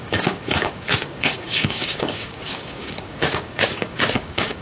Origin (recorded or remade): remade